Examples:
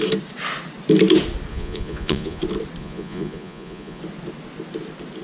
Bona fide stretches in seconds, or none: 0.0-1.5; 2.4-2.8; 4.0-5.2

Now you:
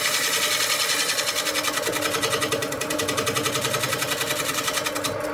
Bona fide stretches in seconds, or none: 0.0-5.3

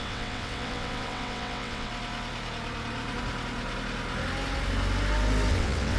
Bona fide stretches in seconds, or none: 1.9-5.5